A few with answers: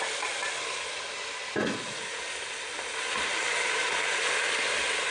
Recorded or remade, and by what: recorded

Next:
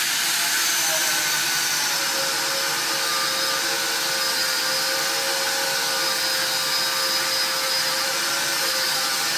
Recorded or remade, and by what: recorded